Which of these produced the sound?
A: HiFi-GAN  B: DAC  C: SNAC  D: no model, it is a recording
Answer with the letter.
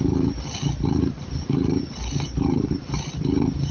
D